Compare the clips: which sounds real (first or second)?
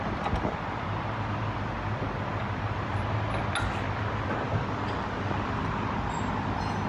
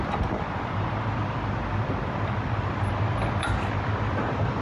first